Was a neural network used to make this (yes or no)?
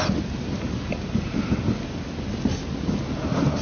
no